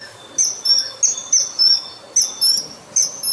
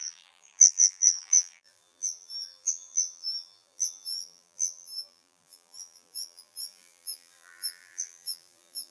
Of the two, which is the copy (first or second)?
second